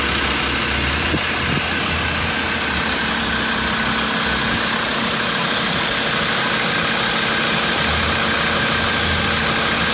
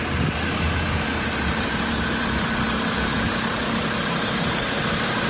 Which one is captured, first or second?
first